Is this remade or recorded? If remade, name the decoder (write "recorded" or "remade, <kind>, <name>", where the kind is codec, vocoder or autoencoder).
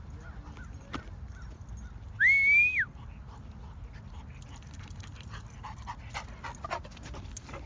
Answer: recorded